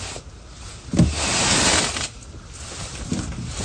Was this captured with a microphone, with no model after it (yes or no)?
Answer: yes